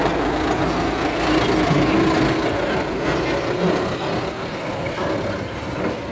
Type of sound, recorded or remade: recorded